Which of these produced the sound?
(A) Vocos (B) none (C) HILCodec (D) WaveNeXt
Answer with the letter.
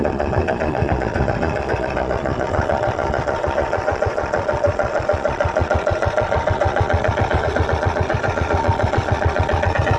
A